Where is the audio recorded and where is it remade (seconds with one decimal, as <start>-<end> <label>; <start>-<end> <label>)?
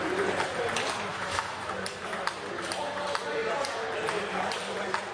0.0-1.1 recorded; 1.1-1.7 remade; 1.7-5.1 recorded